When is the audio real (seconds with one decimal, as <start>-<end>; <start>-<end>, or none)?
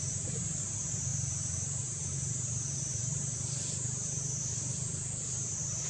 none